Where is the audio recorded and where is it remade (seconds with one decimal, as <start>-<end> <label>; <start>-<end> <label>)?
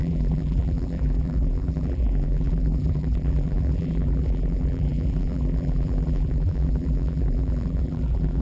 0.0-8.4 remade